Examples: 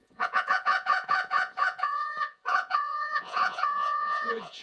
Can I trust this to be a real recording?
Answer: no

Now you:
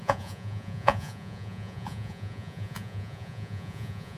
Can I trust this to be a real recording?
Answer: no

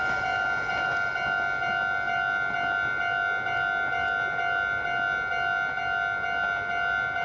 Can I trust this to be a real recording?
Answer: yes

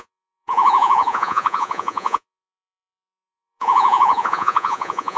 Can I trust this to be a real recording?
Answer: no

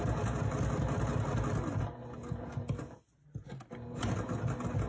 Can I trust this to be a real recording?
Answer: yes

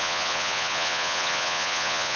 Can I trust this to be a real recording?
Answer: no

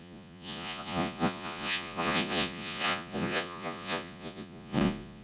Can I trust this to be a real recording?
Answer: no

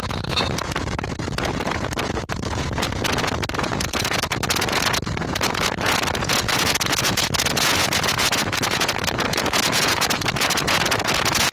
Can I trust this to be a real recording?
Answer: no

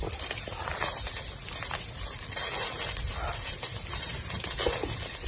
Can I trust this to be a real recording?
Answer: yes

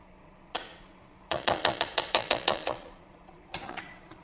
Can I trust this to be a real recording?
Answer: no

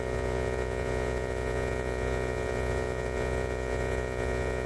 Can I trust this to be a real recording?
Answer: no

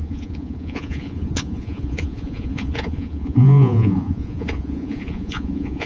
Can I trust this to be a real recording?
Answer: no